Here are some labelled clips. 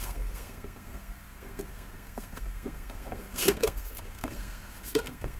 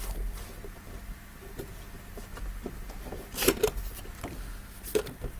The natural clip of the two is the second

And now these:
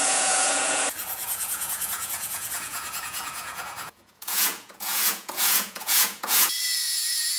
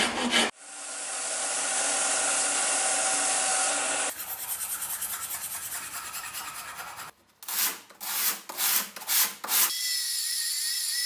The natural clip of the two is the second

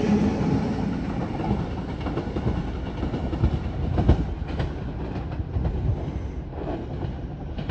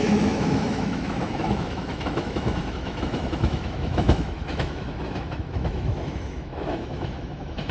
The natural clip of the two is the first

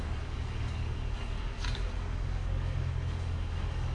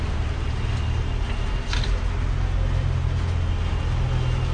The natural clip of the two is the second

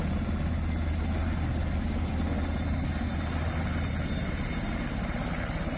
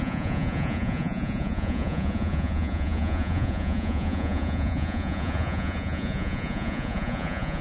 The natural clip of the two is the first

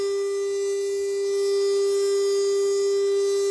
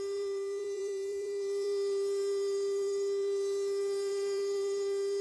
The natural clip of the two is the first